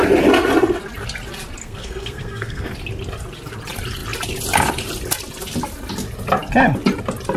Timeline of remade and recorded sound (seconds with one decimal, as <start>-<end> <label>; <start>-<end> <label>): 0.0-1.6 recorded; 1.6-2.7 remade; 2.7-7.4 recorded